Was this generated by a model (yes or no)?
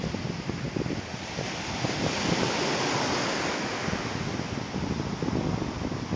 no